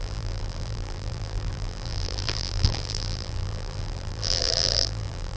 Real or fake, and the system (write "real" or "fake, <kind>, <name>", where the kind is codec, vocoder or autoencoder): fake, vocoder, BigVGAN v2